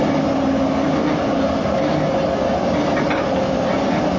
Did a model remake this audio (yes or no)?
no